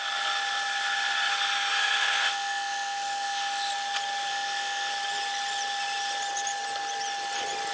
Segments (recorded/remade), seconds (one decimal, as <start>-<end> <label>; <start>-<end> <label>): 0.0-1.3 recorded; 1.3-3.7 remade; 3.7-4.3 recorded; 4.3-4.9 remade; 4.9-7.7 recorded